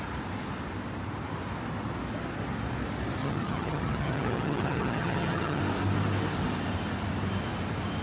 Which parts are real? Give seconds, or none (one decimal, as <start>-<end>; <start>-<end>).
0.0-3.2; 5.6-8.0